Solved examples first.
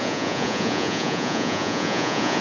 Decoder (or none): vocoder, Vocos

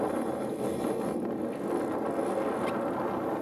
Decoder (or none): none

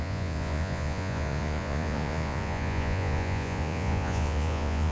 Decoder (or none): vocoder, Vocos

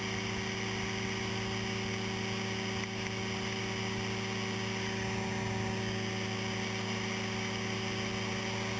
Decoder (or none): none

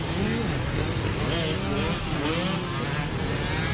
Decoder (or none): none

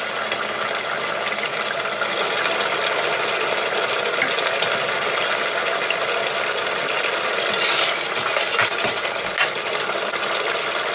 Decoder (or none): none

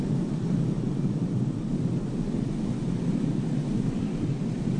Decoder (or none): none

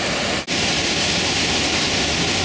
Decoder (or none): none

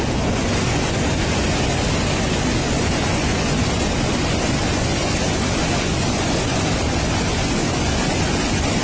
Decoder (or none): vocoder, Vocos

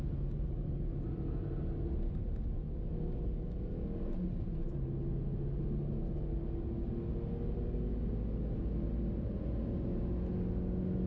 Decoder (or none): none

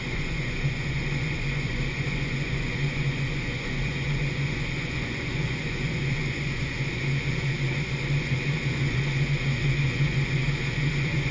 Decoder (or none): vocoder, Vocos